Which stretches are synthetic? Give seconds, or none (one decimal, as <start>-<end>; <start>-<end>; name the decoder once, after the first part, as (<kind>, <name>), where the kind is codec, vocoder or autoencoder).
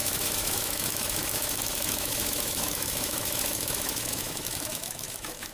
0.0-5.5 (autoencoder, DAC-VAE)